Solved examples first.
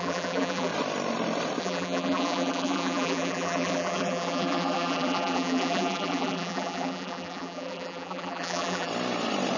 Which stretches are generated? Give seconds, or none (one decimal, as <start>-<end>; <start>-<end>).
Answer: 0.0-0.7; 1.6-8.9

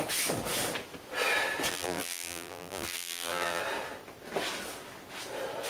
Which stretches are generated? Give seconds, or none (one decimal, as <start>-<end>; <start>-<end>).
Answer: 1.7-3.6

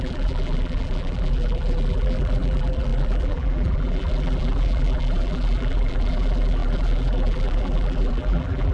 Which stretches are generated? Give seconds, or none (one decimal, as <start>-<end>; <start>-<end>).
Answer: 0.0-8.7

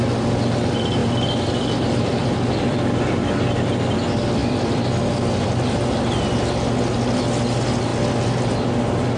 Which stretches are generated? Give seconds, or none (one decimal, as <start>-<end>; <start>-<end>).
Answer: 1.0-3.0; 4.4-5.0